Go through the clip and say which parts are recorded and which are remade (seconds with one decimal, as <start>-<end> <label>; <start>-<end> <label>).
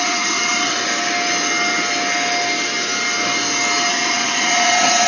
0.0-0.8 remade; 0.8-3.9 recorded; 3.9-5.1 remade